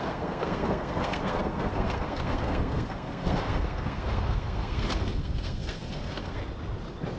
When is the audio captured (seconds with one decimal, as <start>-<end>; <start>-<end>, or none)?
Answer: 6.4-7.2